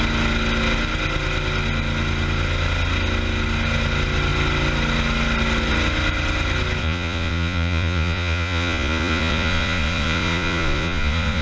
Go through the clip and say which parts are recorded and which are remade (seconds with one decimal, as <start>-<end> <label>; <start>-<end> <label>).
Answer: 0.0-6.8 recorded; 6.8-11.4 remade